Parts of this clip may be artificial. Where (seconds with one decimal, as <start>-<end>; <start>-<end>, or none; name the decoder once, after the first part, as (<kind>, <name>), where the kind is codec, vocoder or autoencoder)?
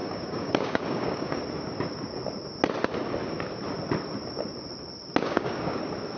0.0-1.4 (codec, DAC); 5.2-5.8